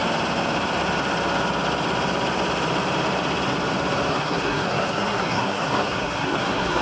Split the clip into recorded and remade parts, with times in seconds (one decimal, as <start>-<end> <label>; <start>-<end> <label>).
0.0-4.1 recorded; 4.1-6.8 remade